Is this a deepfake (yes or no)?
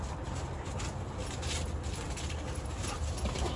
no